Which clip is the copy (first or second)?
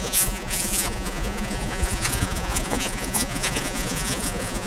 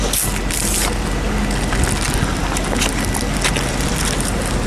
first